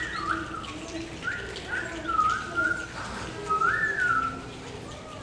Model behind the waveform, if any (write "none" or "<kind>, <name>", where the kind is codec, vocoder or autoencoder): none